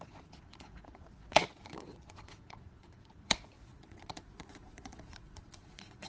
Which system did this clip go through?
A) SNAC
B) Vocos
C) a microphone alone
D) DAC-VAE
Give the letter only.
B